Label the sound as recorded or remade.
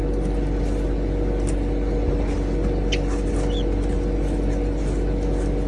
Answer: recorded